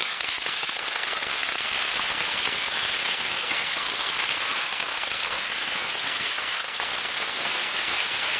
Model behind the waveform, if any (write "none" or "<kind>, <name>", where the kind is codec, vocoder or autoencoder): codec, SNAC